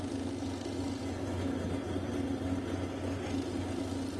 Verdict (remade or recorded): recorded